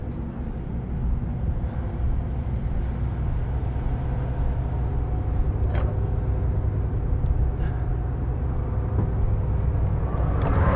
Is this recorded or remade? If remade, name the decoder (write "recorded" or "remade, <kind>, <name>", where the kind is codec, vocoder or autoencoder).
recorded